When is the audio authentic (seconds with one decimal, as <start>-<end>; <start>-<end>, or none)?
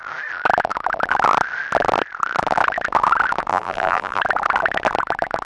0.0-3.5; 4.2-5.4